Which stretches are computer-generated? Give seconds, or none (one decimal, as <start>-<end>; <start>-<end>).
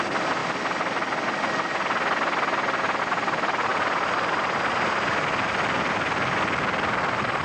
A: none